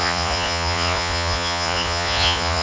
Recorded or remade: remade